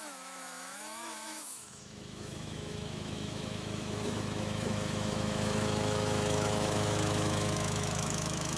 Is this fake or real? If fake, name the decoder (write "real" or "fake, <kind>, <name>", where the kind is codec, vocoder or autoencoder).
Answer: fake, autoencoder, DAC-VAE